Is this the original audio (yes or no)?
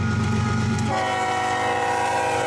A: yes